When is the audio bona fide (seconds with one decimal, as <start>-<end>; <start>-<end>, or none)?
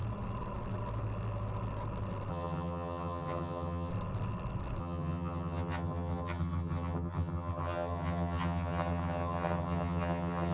0.0-2.3; 3.9-4.8